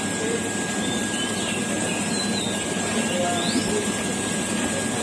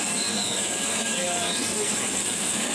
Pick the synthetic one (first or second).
second